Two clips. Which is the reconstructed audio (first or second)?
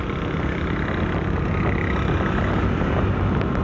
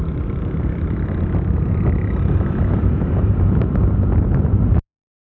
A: second